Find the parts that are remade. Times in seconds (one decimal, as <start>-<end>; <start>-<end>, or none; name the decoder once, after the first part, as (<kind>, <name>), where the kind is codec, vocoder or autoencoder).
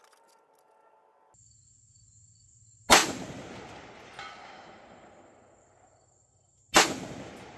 3.0-3.5 (vocoder, BigVGAN v2)